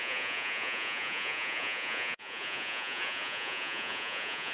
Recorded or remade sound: remade